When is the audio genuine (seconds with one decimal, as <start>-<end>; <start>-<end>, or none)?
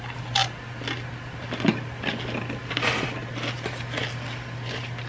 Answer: 0.0-5.1